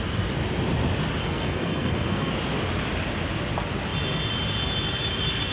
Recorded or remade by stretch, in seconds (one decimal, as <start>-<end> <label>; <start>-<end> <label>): 0.0-1.2 recorded; 1.2-2.3 remade; 2.3-5.5 recorded